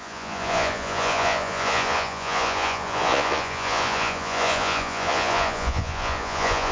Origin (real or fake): fake